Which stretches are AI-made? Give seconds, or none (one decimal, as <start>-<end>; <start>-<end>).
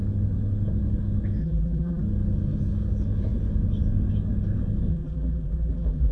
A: 1.4-2.0; 4.9-6.1